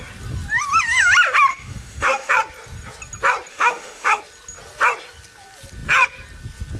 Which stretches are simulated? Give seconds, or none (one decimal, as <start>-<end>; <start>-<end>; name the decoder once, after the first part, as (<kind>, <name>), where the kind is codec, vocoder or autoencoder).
1.5-2.3 (autoencoder, DAC-VAE); 3.5-4.2